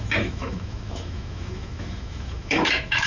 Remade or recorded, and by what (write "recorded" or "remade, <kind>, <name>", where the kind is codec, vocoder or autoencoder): remade, autoencoder, DAC-VAE